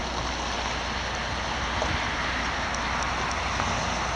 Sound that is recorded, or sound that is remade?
recorded